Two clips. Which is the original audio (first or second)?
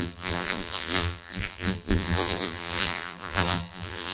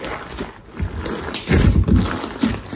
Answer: second